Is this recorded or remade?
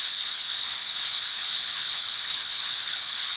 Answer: remade